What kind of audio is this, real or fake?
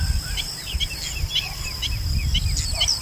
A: real